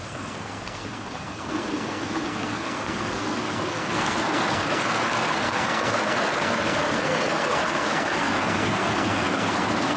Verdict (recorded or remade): remade